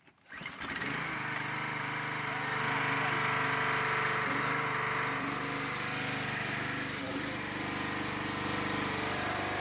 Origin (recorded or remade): recorded